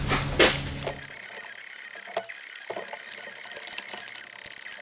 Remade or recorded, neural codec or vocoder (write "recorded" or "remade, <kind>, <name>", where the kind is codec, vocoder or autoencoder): recorded